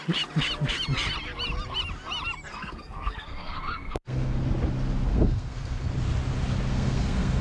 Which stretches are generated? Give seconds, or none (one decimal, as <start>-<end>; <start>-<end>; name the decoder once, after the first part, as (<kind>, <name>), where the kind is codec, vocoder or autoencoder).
2.5-4.4 (codec, SNAC); 5.1-5.9; 6.7-7.4